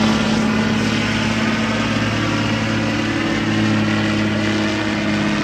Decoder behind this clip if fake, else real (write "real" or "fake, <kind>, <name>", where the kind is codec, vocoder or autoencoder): real